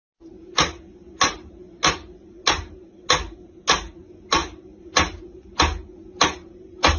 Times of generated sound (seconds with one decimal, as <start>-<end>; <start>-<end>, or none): none